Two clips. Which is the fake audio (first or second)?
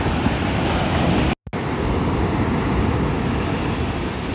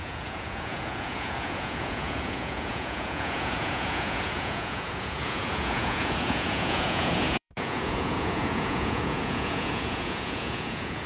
second